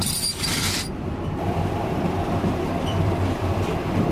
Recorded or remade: remade